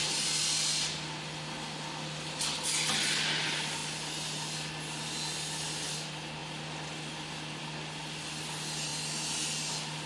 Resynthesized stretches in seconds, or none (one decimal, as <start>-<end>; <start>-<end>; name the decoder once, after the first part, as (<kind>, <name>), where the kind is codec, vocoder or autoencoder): none